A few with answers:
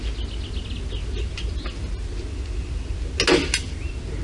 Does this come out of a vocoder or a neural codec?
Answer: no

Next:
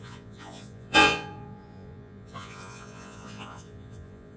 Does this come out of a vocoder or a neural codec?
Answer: yes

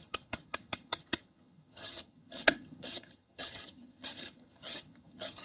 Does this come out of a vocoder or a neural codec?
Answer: yes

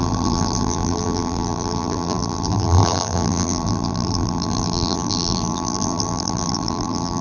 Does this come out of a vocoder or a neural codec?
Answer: yes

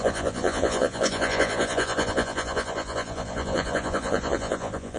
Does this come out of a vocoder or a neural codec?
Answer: yes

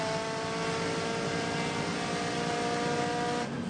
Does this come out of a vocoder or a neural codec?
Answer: no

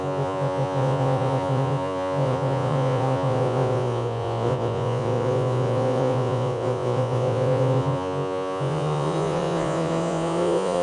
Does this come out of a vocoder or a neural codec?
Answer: yes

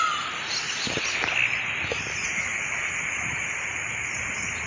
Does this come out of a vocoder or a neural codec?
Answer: no